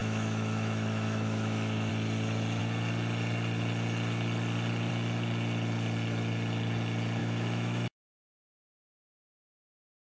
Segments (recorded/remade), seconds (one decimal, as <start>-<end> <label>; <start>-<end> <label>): 0.0-1.9 remade; 1.9-7.2 recorded; 7.2-8.7 remade; 8.7-10.0 recorded